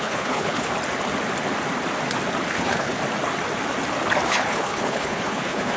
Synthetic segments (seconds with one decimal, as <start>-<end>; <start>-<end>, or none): 0.0-0.7; 2.5-3.0; 4.3-5.8